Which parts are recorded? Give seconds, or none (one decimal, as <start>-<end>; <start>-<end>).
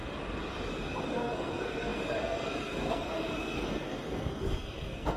0.0-1.0